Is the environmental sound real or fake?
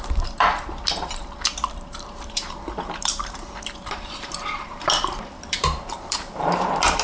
fake